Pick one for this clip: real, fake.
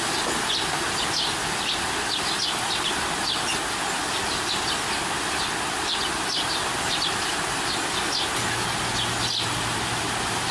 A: real